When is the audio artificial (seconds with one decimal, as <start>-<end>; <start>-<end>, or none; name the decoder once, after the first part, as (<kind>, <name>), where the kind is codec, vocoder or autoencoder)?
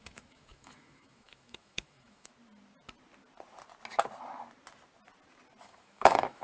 0.0-2.3 (autoencoder, DAC-VAE); 5.6-6.4